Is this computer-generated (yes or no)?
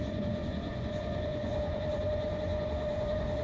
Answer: yes